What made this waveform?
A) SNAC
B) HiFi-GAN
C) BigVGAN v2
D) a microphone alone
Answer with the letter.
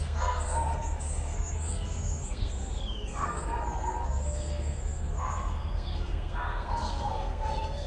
A